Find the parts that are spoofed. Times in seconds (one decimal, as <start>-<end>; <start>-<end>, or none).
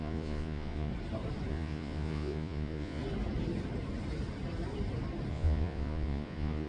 0.0-0.9; 1.5-3.0; 5.3-6.7